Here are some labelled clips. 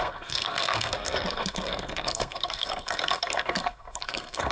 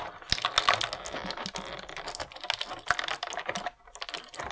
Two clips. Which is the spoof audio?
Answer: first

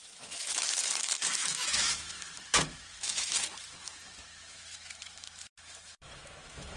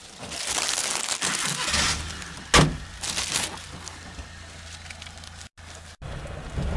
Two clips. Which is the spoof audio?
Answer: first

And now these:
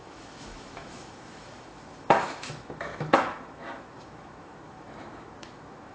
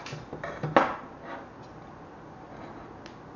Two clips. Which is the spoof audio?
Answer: first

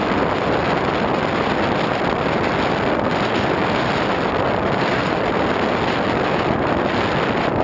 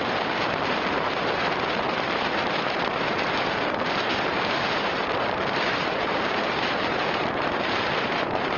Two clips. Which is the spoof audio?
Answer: second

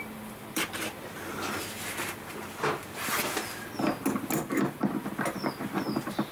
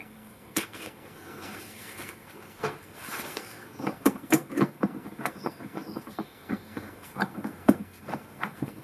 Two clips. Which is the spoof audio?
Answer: second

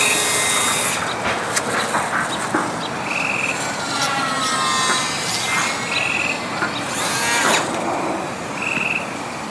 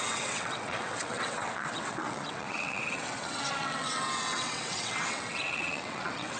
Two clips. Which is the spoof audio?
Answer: second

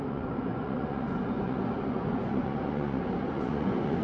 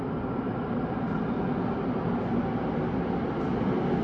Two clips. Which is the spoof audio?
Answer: first